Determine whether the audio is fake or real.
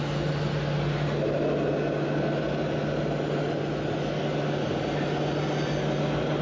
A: real